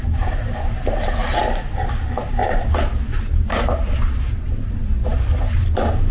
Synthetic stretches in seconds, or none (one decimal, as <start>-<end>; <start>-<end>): 0.0-1.2; 1.9-6.1